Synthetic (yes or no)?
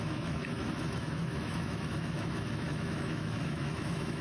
yes